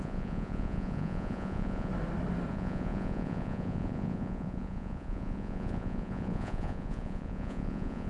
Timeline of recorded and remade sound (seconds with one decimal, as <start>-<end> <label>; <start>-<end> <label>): 0.0-1.9 remade; 1.9-2.5 recorded; 2.5-8.1 remade